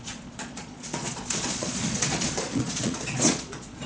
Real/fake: fake